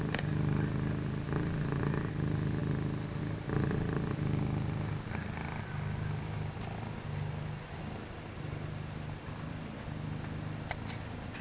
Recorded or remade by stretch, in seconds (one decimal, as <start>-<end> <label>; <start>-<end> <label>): 0.0-11.4 recorded